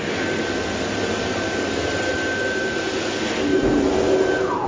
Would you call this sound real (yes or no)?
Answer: yes